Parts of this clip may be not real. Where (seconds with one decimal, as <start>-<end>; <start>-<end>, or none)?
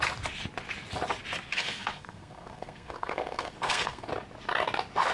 1.5-4.1